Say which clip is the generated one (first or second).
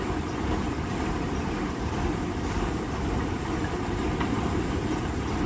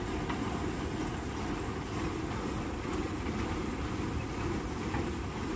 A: first